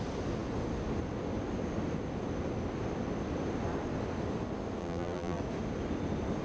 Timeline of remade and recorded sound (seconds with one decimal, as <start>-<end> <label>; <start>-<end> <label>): 0.0-4.8 recorded; 4.8-5.4 remade; 5.4-6.4 recorded

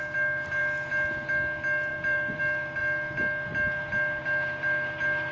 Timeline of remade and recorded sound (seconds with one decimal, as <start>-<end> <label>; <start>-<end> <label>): 0.0-1.9 recorded; 1.9-2.4 remade; 2.4-5.3 recorded

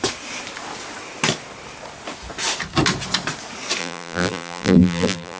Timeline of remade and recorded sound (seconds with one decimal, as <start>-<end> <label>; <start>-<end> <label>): 0.0-3.8 recorded; 3.8-5.4 remade

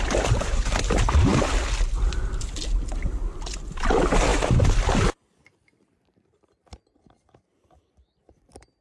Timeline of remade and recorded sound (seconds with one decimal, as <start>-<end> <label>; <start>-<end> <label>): 0.0-1.3 remade; 1.3-3.8 recorded; 3.8-8.8 remade

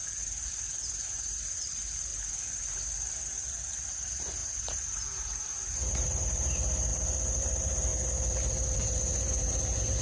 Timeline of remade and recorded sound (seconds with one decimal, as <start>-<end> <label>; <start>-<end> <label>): 0.0-2.1 remade; 2.1-2.6 recorded; 2.6-6.9 remade; 6.9-7.4 recorded; 7.4-7.9 remade; 7.9-8.7 recorded; 8.7-10.0 remade

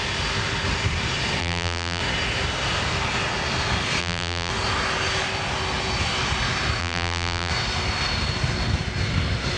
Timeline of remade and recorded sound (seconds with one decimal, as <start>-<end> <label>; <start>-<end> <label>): 0.0-1.4 recorded; 1.4-2.0 remade; 2.0-4.0 recorded; 4.0-4.5 remade; 4.5-6.8 recorded; 6.8-7.5 remade; 7.5-9.6 recorded

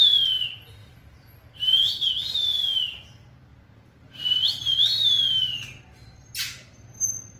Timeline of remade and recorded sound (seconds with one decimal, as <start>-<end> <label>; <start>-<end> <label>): 0.0-3.5 recorded; 3.5-4.6 remade; 4.6-7.4 recorded